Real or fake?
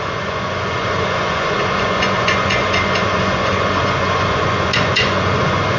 fake